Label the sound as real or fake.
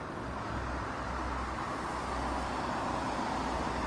real